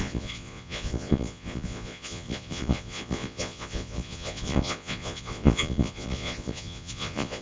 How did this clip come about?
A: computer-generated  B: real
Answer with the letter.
A